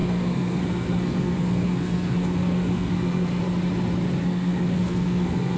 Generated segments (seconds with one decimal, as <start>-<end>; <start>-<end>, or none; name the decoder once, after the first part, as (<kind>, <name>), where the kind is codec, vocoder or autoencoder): 0.0-3.4 (codec, SNAC); 4.2-5.6